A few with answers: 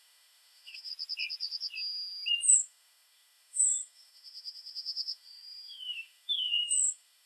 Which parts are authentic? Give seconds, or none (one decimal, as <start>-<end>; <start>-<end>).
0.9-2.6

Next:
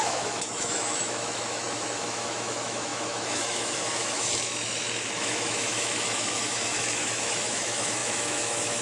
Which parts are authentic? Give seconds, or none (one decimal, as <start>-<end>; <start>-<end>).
none

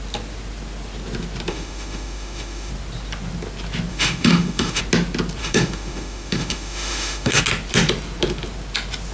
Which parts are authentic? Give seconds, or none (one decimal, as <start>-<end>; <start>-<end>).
0.0-1.5; 2.7-3.9; 4.8-5.4; 7.4-9.1

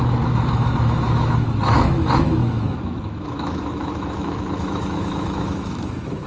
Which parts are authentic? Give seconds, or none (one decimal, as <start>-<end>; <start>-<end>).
none

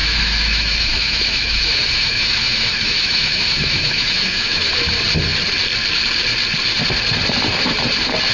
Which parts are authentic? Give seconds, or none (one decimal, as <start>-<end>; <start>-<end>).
4.7-8.3